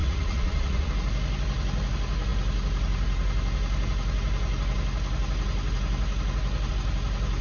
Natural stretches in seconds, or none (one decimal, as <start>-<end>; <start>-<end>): 0.9-7.4